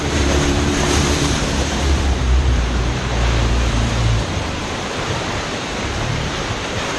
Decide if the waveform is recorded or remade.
remade